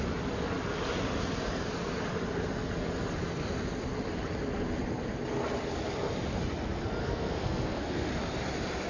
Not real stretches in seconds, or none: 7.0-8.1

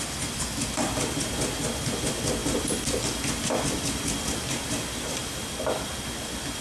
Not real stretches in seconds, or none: none

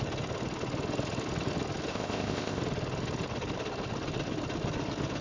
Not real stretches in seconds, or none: 1.9-2.6

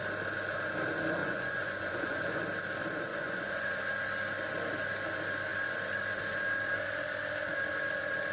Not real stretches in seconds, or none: 1.2-2.4; 3.1-3.7

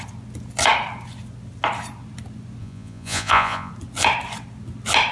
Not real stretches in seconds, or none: 2.6-3.7